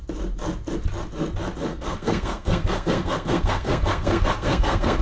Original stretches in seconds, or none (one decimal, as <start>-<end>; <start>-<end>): 0.0-1.7